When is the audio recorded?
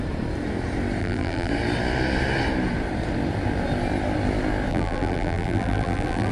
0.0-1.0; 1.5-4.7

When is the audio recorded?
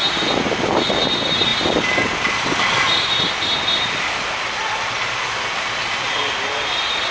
0.0-7.1